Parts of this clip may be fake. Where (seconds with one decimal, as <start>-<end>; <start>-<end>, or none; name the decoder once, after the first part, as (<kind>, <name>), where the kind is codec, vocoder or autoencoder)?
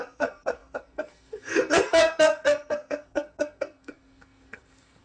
0.0-5.0 (codec, SNAC)